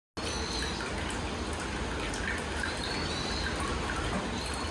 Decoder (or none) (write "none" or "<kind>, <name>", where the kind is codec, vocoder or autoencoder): none